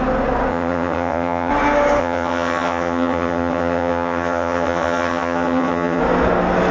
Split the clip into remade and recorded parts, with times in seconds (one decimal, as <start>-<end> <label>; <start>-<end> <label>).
0.0-0.5 recorded; 0.5-1.5 remade; 1.5-2.0 recorded; 2.0-6.0 remade; 6.0-6.7 recorded